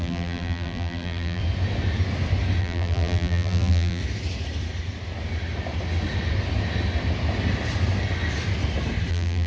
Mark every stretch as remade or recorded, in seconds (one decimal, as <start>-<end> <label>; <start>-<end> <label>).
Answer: 0.0-1.4 remade; 1.4-2.6 recorded; 2.6-4.0 remade; 4.0-9.1 recorded; 9.1-9.5 remade